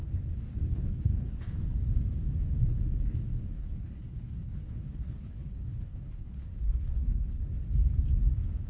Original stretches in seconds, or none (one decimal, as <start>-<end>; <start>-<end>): 0.0-0.7; 1.3-3.6; 7.4-8.7